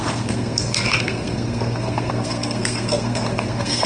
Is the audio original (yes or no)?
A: no